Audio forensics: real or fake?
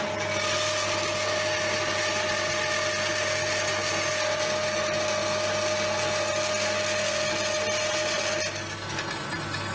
real